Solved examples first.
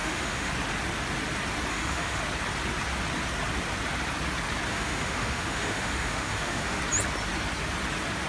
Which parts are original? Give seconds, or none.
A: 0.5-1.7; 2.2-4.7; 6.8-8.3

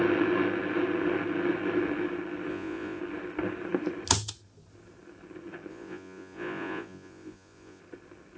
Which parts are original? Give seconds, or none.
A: 0.0-2.5; 3.0-5.7; 7.8-8.4

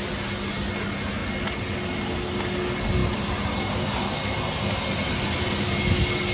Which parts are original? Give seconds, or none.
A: 0.0-6.3

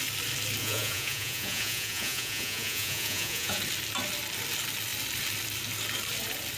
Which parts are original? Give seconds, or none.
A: 0.0-0.6; 3.6-6.6

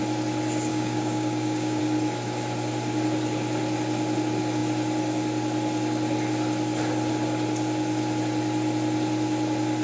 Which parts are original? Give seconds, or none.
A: 0.0-0.7; 1.8-9.8